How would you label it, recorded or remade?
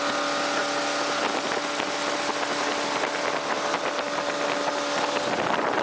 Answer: recorded